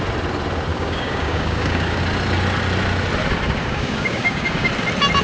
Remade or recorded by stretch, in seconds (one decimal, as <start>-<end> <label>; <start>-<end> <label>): 0.0-0.7 recorded; 0.7-2.0 remade; 2.0-3.6 recorded; 3.6-4.7 remade; 4.7-5.2 recorded